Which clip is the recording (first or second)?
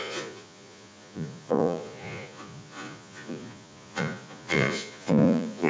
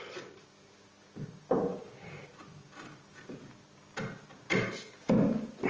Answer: second